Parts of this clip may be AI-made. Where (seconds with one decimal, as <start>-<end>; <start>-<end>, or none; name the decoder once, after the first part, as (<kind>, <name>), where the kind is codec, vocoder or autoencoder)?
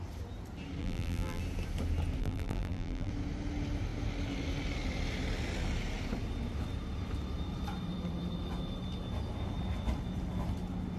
0.8-1.4 (vocoder, BigVGAN v2); 2.2-3.1